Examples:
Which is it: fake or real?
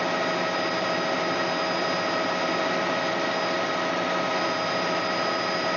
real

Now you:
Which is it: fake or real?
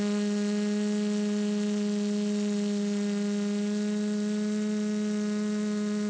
real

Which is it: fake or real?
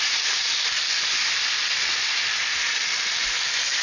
real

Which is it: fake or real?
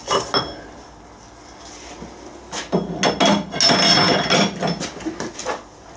real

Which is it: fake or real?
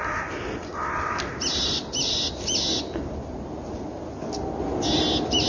real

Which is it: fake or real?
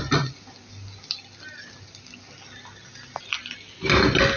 real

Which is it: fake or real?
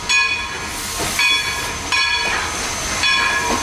real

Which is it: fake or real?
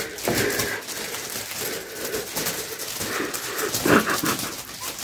real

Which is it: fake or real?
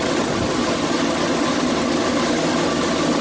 real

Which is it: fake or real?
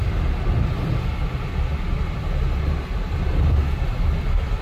real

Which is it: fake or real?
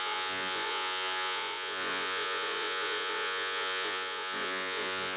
fake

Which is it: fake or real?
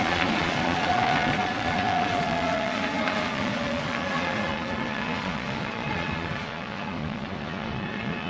fake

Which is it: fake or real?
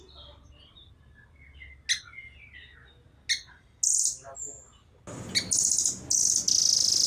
real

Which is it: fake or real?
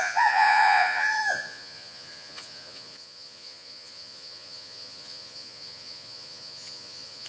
fake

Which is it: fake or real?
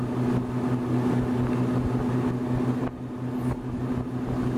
real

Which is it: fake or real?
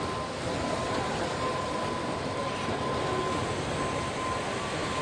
real